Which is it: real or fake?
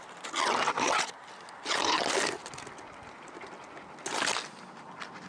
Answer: real